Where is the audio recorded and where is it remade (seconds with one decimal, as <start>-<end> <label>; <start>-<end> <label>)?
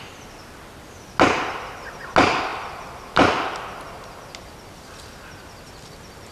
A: 0.0-6.3 recorded